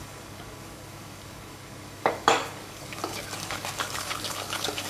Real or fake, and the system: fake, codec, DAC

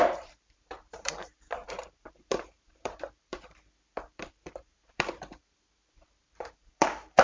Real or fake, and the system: fake, vocoder, BigVGAN v2